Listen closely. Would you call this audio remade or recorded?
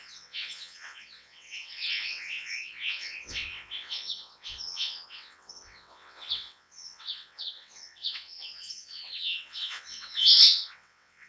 remade